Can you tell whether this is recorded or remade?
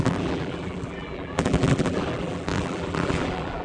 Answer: remade